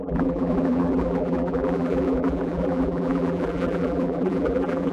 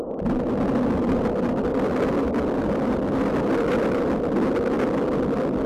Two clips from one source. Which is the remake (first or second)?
first